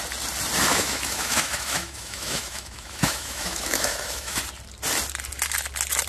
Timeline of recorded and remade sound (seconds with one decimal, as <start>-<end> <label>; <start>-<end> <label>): 0.0-0.7 recorded; 0.7-4.4 remade; 4.4-6.1 recorded